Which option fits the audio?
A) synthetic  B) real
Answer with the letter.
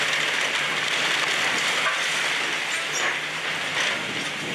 B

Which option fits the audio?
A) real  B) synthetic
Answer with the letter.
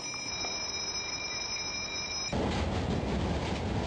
A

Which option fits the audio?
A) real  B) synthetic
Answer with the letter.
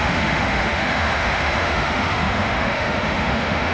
B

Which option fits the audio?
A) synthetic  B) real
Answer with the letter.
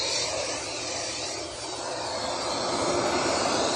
B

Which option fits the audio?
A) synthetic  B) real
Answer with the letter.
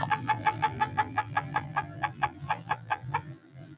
A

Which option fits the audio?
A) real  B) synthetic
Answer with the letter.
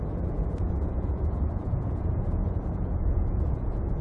B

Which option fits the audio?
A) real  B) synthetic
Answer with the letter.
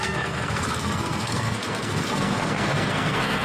B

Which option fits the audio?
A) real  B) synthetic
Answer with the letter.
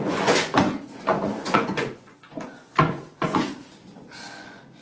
B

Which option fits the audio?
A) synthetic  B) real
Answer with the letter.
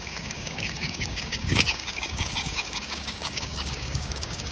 A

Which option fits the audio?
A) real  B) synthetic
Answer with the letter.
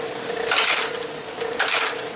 A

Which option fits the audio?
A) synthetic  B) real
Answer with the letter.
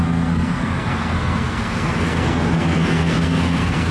A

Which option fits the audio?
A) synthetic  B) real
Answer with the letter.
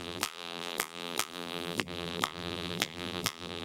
A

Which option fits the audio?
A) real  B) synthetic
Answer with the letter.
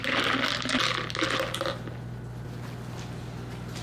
A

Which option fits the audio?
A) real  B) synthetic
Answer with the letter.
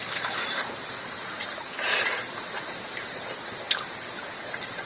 B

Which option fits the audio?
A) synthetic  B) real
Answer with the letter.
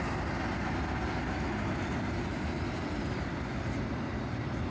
B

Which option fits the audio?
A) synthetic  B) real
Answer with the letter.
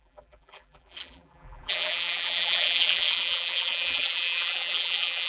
A